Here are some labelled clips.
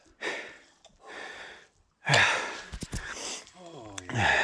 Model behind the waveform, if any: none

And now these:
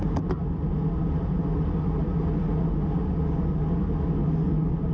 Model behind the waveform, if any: none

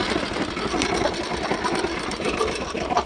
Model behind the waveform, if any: vocoder, BigVGAN v2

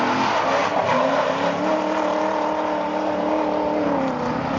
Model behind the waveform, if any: none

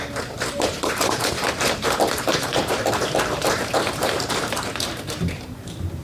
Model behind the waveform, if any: vocoder, BigVGAN v2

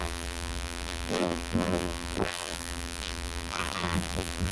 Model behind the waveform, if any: vocoder, BigVGAN v2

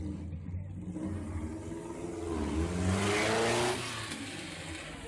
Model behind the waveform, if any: none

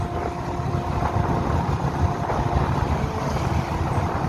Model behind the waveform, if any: none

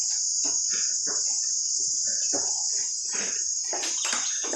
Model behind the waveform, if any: vocoder, BigVGAN v2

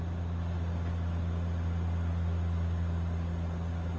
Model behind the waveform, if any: none